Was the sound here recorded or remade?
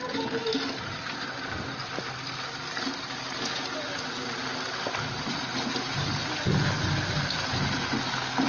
recorded